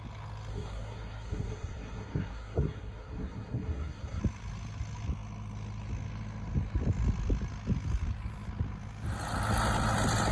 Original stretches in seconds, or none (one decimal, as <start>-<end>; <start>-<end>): 0.0-0.5; 4.2-10.3